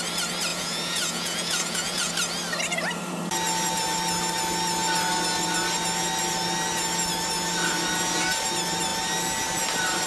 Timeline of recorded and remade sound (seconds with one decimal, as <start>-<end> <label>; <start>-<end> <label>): 0.0-0.5 recorded; 0.5-2.1 remade; 2.1-10.1 recorded